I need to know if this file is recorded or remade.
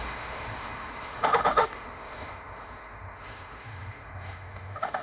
remade